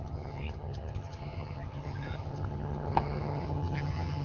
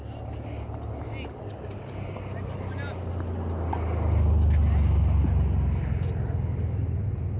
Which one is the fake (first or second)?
first